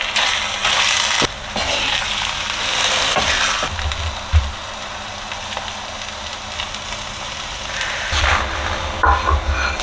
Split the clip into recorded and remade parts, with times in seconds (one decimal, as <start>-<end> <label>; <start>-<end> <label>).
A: 0.0-9.8 recorded